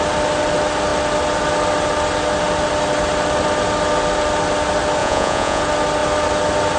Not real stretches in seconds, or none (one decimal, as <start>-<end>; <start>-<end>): 5.0-5.6